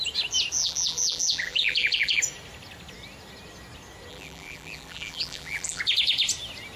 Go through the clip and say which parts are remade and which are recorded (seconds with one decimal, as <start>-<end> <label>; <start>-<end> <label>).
0.0-0.6 recorded; 0.6-2.2 remade; 2.2-4.1 recorded; 4.1-5.8 remade; 5.8-6.8 recorded